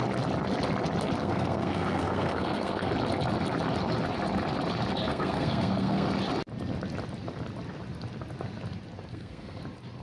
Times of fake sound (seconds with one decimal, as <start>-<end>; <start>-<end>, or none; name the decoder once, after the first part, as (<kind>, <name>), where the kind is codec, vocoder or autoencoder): 1.2-2.9 (codec, SNAC); 5.1-6.1; 9.1-9.6